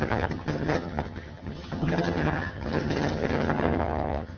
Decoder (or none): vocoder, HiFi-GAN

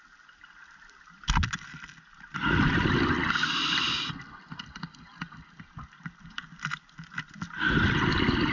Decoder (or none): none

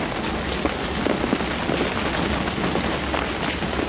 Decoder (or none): none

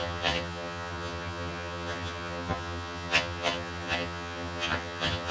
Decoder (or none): vocoder, HiFi-GAN